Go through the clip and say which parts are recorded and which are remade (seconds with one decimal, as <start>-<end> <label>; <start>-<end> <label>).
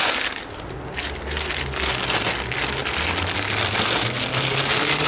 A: 0.0-5.1 recorded